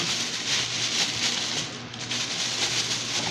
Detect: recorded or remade recorded